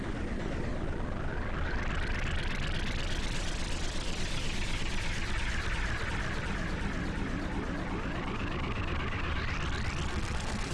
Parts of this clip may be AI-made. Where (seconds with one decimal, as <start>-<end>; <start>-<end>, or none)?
10.1-10.7